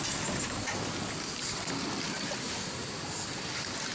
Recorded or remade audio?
recorded